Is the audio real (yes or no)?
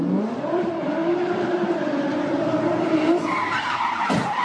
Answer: no